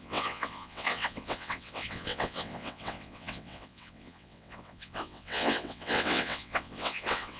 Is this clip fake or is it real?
fake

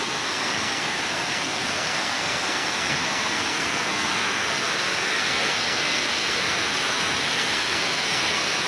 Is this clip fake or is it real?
fake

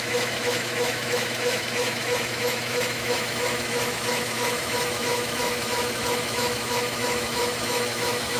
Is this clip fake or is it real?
fake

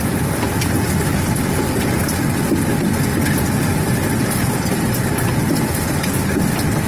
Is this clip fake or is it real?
real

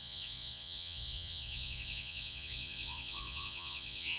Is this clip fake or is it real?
fake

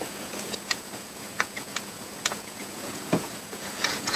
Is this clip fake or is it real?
fake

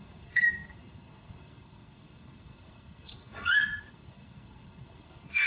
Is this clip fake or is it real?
fake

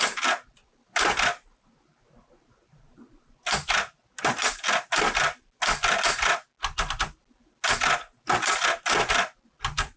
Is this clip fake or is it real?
real